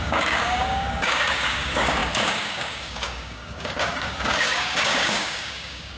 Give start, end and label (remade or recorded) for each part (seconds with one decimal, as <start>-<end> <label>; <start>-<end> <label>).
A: 0.0-6.0 remade